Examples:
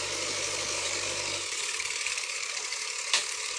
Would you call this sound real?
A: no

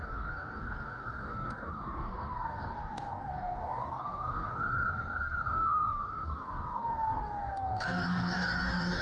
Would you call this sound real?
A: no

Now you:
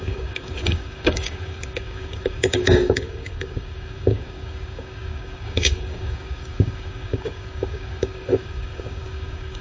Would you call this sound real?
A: no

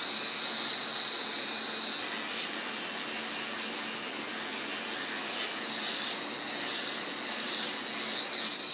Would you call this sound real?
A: yes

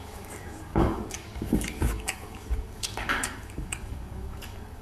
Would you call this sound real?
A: no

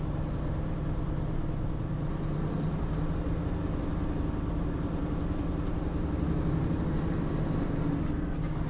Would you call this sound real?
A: yes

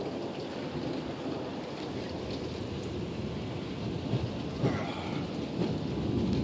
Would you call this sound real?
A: yes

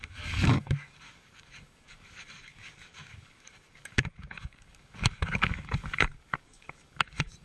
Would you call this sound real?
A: no